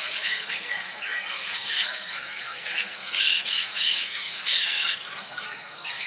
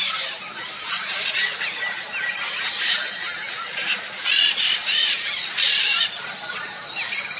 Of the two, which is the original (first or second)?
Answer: second